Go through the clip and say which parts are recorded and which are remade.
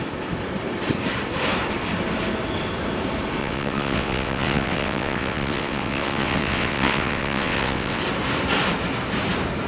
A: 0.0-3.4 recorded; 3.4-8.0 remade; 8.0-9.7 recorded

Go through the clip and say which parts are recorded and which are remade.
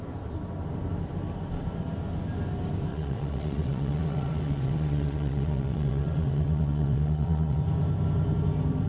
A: 0.0-2.9 recorded; 2.9-7.6 remade; 7.6-8.9 recorded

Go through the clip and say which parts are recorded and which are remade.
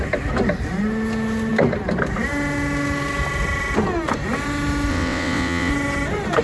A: 0.0-4.9 recorded; 4.9-5.7 remade; 5.7-6.4 recorded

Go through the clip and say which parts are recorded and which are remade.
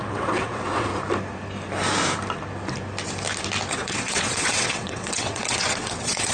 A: 0.0-0.9 remade; 0.9-3.7 recorded; 3.7-6.3 remade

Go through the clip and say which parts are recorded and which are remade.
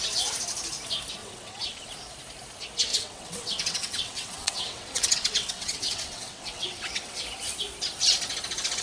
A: 0.0-1.2 recorded; 1.2-1.9 remade; 1.9-2.9 recorded; 2.9-7.2 remade; 7.2-8.8 recorded